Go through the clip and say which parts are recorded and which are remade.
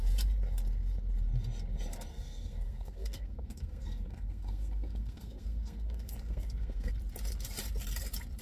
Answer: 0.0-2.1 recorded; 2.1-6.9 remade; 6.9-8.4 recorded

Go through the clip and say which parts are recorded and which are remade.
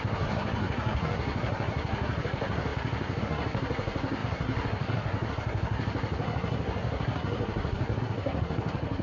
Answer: 0.0-9.0 remade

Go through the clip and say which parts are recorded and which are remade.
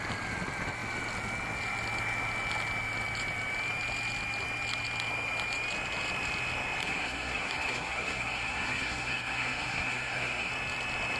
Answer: 0.0-6.8 recorded; 6.8-10.5 remade; 10.5-11.2 recorded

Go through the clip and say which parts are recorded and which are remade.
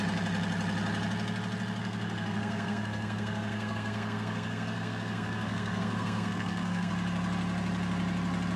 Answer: 0.0-1.8 recorded; 1.8-6.9 remade; 6.9-8.6 recorded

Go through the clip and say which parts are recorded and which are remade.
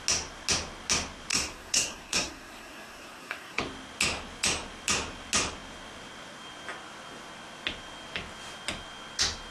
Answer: 0.0-1.3 recorded; 1.3-3.6 remade; 3.6-9.5 recorded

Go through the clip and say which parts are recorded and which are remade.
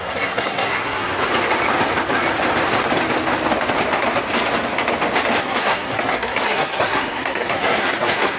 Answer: 0.0-1.1 remade; 1.1-5.4 recorded; 5.4-8.4 remade